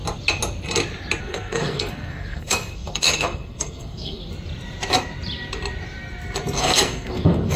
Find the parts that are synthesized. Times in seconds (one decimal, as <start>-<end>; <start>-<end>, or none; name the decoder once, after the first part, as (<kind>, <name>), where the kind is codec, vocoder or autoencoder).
1.2-4.2 (codec, SNAC); 6.6-7.6